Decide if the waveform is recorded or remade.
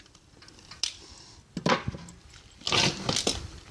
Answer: recorded